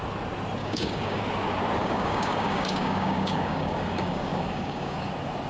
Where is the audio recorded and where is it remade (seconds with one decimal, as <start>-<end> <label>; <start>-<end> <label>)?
0.0-0.6 recorded; 0.6-1.2 remade; 1.2-1.8 recorded; 1.8-5.1 remade; 5.1-5.5 recorded